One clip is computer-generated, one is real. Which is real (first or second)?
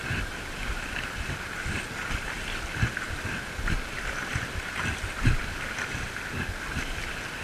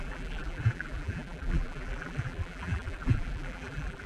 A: first